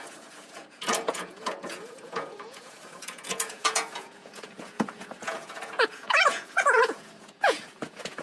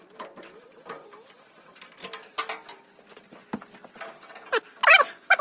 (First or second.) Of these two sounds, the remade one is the first